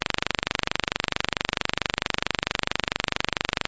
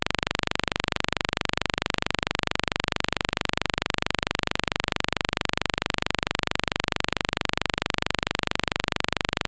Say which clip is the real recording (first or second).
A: first